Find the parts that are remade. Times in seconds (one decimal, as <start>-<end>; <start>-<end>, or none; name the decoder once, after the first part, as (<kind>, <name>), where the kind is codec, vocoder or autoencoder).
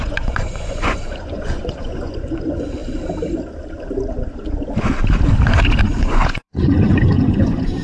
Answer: 0.0-2.8 (vocoder, Vocos); 5.8-7.8